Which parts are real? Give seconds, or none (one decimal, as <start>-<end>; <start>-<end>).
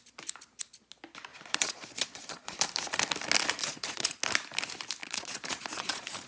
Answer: 0.0-1.3; 2.6-3.6; 4.2-5.0